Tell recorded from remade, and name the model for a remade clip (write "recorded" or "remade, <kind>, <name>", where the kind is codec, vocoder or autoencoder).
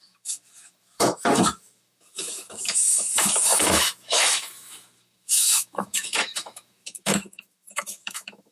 remade, autoencoder, DAC-VAE